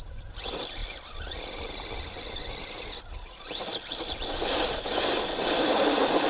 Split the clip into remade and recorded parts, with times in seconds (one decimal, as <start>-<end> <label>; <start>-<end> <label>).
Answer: 0.0-6.3 recorded